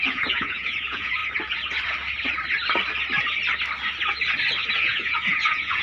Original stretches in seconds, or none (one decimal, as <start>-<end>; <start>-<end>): 1.2-4.7